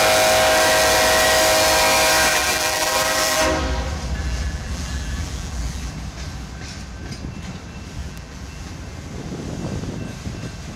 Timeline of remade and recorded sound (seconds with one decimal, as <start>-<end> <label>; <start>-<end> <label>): 0.0-2.3 recorded; 2.3-3.4 remade; 3.4-4.2 recorded; 4.2-5.9 remade; 5.9-8.0 recorded; 8.0-8.7 remade; 8.7-10.8 recorded